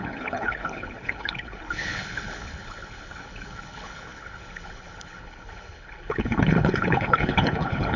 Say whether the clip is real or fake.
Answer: fake